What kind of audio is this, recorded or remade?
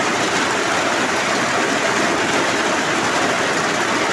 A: recorded